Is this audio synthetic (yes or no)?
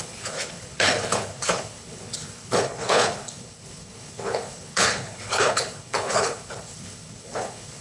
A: yes